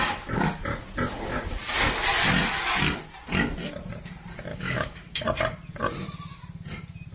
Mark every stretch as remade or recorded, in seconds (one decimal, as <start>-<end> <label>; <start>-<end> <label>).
0.0-4.5 recorded; 4.5-5.2 remade; 5.2-7.1 recorded